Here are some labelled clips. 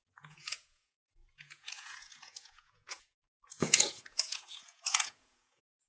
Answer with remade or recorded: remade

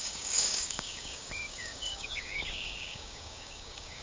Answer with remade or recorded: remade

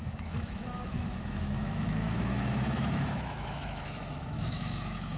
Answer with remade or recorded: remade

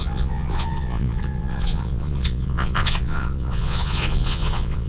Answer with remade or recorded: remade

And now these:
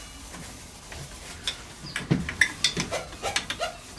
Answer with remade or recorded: recorded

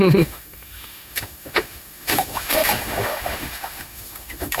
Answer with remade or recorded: remade